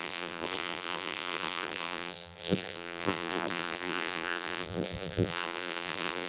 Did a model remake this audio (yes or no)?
yes